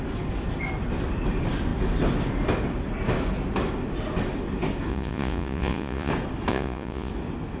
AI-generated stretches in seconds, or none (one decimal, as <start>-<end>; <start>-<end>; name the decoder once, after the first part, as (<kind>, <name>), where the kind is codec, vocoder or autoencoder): 4.9-6.1 (vocoder, Vocos); 6.5-7.1

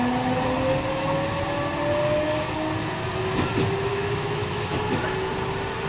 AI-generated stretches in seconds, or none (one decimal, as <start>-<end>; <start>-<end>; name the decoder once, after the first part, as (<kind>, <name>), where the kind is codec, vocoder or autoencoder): 3.9-5.3 (autoencoder, DAC-VAE)

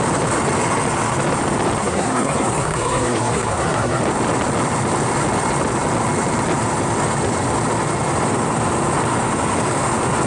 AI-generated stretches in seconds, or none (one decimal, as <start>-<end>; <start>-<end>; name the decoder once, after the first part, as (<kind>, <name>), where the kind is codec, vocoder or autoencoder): 1.8-4.0 (codec, SNAC)

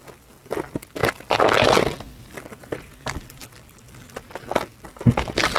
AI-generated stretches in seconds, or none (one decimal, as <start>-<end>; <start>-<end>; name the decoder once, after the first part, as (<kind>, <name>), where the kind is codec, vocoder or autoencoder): none

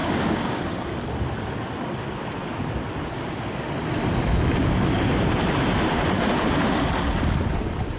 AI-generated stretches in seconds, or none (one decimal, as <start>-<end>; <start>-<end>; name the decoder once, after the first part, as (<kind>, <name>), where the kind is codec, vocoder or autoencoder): 0.0-0.6 (codec, DAC)

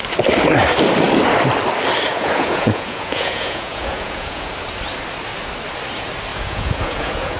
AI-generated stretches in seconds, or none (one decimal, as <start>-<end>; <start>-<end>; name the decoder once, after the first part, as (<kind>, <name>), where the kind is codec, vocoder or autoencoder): 2.1-4.5 (vocoder, Vocos); 6.3-7.4